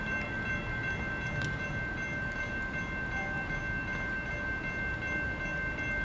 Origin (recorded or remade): recorded